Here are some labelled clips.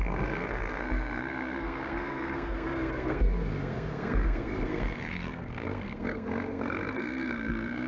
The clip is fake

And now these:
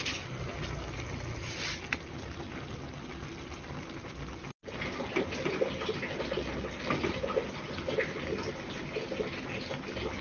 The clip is real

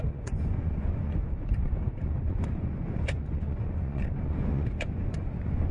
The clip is fake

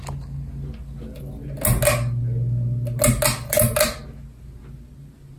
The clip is real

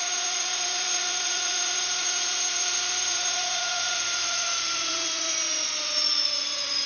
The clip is fake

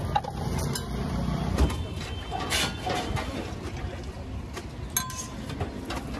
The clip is real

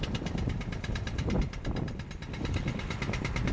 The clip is real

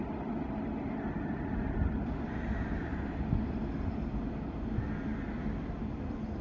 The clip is real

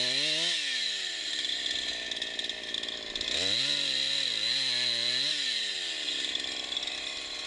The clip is real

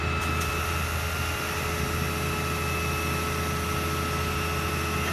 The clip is real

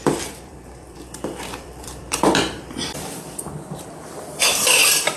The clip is fake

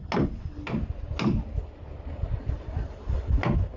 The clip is real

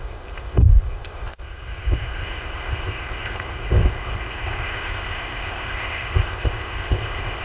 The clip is fake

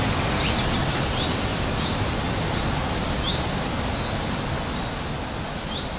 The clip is real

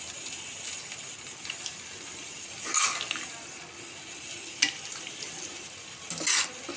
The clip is real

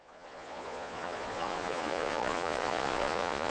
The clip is fake